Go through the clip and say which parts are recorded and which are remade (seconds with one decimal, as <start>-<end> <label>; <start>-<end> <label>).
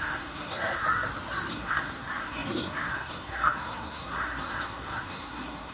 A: 0.0-0.8 remade; 0.8-1.5 recorded; 1.5-5.7 remade